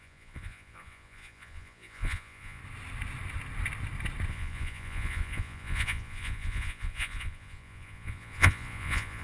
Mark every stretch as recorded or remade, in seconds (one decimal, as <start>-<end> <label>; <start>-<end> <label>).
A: 0.0-2.6 remade; 2.6-4.3 recorded; 4.3-9.2 remade